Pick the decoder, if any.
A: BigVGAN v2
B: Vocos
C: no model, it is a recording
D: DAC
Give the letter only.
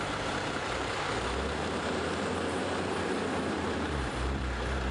A